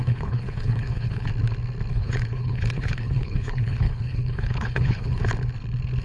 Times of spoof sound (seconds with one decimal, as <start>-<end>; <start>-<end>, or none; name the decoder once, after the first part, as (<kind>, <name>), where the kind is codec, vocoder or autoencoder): 0.0-1.3 (codec, HILCodec); 1.9-5.2